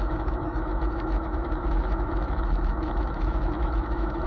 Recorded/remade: remade